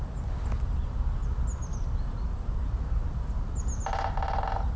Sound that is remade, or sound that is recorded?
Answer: recorded